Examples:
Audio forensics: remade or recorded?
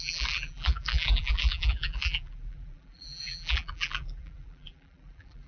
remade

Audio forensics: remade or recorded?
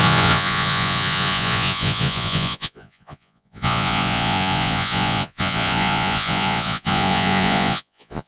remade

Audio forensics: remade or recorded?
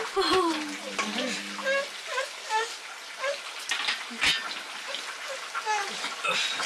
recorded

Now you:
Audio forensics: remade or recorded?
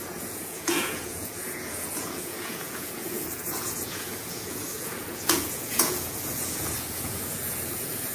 remade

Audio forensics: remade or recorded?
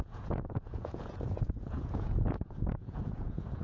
remade